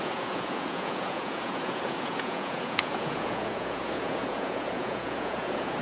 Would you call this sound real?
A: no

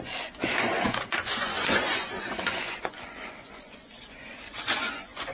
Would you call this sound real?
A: no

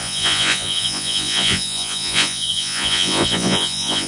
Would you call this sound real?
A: no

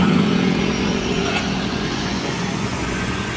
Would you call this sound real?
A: no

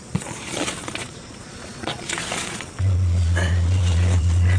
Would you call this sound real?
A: no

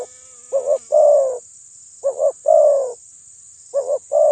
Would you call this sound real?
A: yes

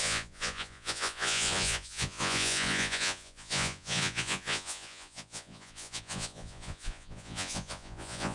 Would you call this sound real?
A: no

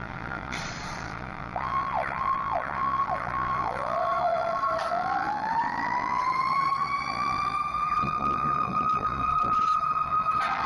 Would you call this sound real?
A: no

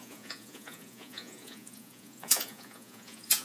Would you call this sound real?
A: no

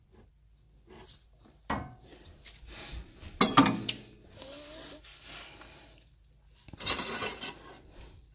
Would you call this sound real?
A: yes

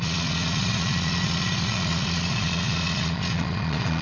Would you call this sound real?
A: no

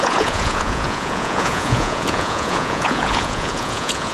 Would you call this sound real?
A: no